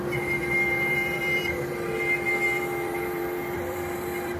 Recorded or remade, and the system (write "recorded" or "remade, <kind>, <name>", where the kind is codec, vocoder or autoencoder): remade, vocoder, BigVGAN v2